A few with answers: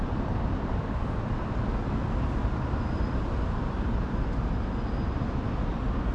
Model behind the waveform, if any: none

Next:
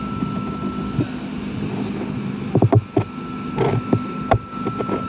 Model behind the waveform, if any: none